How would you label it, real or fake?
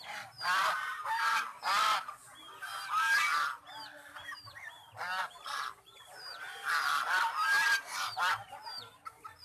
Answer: fake